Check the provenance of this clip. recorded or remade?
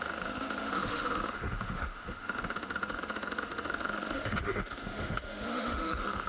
remade